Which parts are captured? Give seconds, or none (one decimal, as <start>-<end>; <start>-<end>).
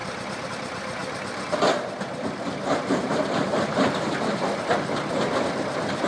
0.0-6.1